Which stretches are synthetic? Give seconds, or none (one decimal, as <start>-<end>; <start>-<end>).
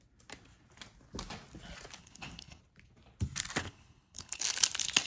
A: 2.0-2.6; 3.6-4.4